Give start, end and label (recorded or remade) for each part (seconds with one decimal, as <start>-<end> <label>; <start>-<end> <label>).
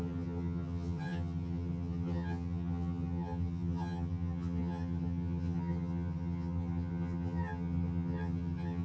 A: 0.0-8.8 remade